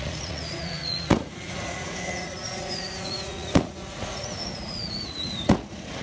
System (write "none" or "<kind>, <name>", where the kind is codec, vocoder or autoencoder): vocoder, Vocos